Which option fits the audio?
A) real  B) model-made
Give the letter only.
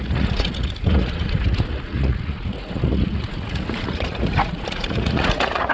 B